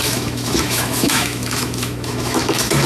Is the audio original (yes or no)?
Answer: no